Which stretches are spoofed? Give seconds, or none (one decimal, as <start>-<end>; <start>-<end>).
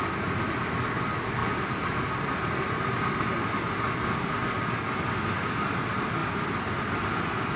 1.4-3.8; 6.2-7.6